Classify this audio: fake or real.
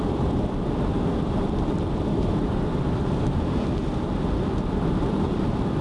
fake